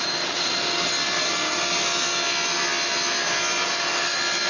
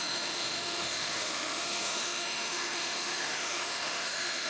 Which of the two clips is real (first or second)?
first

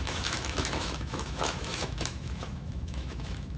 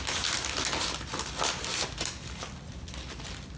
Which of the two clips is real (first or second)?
second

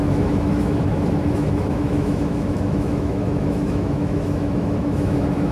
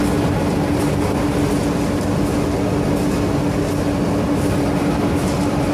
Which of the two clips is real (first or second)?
second